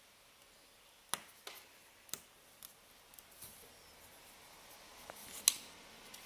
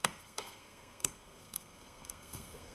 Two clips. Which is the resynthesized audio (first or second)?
second